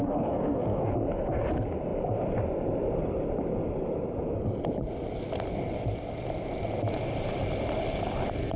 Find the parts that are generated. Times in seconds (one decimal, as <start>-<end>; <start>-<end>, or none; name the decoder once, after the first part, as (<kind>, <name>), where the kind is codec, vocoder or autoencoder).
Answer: 0.0-0.9 (codec, DAC)